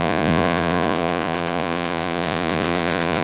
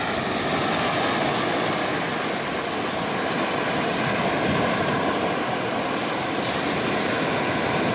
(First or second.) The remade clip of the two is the first